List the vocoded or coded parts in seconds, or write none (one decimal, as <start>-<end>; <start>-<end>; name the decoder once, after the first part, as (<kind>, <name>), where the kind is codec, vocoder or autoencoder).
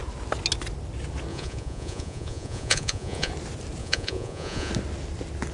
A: 1.3-3.3 (vocoder, Vocos); 3.8-4.7